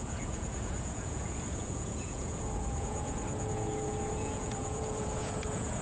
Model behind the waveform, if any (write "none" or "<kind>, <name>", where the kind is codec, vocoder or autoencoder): vocoder, Vocos